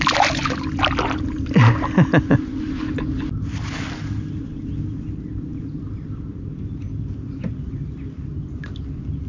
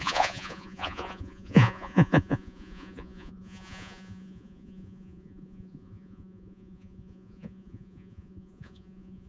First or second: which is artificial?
second